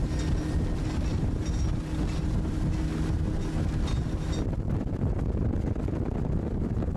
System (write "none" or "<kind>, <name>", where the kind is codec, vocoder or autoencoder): none